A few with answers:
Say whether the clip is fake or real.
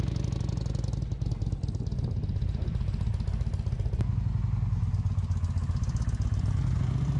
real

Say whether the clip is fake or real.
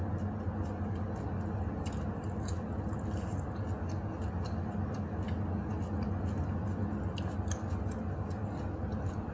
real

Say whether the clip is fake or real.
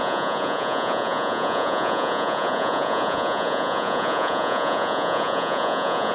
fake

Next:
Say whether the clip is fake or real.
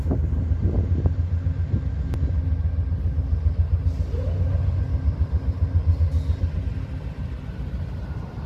real